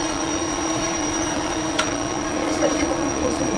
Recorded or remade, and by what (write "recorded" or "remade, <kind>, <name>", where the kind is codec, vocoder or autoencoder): remade, vocoder, Vocos